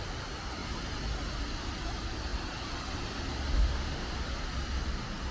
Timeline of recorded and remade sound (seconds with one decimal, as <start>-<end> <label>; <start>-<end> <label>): 0.0-3.5 recorded; 3.5-4.1 remade; 4.1-5.3 recorded